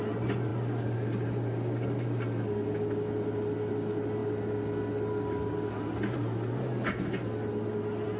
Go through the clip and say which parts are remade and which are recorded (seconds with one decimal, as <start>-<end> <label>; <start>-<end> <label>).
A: 0.0-8.2 recorded